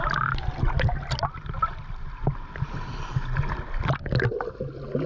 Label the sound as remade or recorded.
recorded